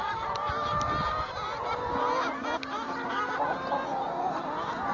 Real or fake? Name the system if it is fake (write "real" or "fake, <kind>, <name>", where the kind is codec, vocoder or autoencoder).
real